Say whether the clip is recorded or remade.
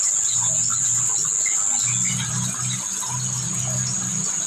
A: recorded